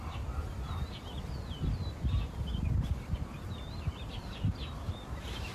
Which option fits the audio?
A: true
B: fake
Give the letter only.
B